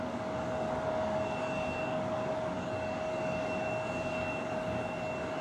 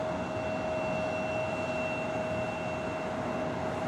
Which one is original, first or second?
second